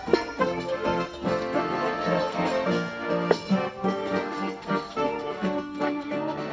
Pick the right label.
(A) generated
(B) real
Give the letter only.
A